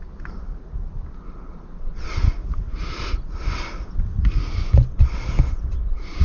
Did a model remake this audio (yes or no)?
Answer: no